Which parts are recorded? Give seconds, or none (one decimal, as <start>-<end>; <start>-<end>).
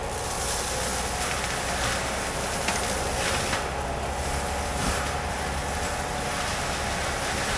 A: 0.0-7.6